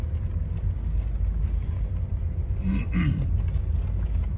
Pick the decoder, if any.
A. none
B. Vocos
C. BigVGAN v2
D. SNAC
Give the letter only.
A